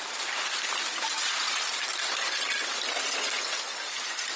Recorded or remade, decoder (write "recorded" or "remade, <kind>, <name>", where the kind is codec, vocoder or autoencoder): recorded